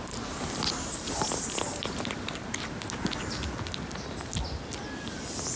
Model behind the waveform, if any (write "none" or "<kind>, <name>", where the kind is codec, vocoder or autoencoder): none